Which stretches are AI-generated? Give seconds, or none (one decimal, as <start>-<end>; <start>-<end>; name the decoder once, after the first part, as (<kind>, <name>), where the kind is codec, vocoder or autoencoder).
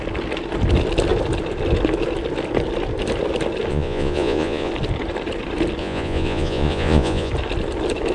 3.7-4.7 (vocoder, Vocos); 5.8-7.3